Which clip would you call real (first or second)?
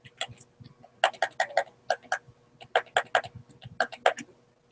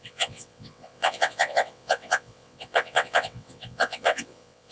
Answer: first